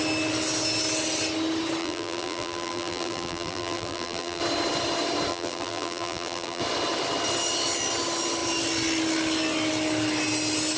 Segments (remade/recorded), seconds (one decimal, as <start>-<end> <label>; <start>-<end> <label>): 0.0-1.8 recorded; 1.8-4.4 remade; 4.4-5.3 recorded; 5.3-6.6 remade; 6.6-10.8 recorded